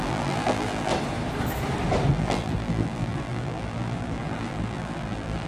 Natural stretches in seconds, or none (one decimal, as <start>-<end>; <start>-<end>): 0.9-2.1